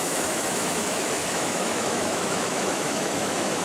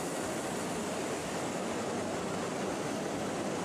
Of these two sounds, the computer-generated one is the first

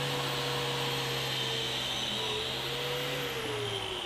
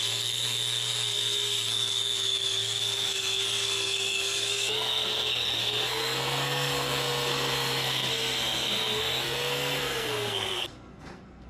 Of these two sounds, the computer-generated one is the second